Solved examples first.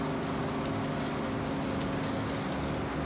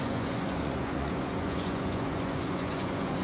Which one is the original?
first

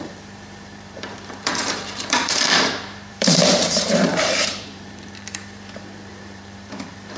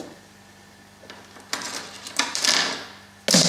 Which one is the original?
second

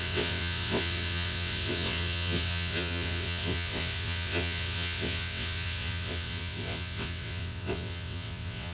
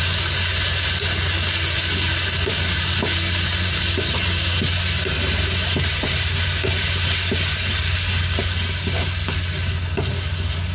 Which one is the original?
second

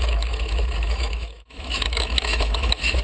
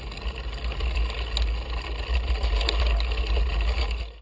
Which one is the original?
second